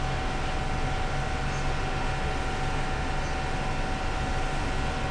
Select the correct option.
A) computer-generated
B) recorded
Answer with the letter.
B